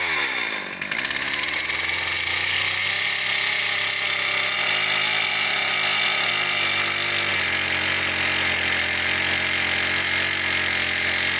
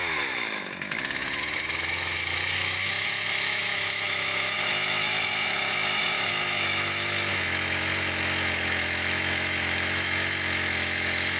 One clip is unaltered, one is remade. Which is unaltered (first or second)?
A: first